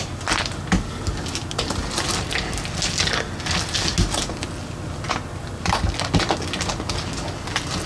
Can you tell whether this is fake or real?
real